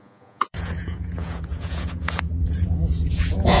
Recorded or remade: remade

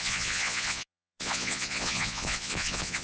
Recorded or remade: remade